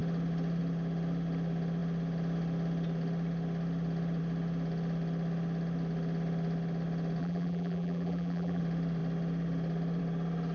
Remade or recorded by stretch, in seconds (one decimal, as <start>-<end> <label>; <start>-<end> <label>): 0.0-7.2 recorded; 7.2-8.6 remade; 8.6-10.5 recorded